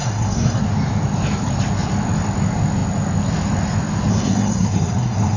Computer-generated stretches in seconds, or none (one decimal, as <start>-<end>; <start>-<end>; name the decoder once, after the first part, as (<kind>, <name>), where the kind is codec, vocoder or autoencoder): 0.0-0.6 (codec, SNAC); 4.1-5.4